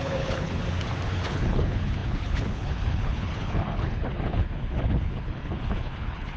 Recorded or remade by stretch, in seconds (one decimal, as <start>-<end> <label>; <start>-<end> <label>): 0.0-0.6 remade; 0.6-1.1 recorded; 1.1-6.4 remade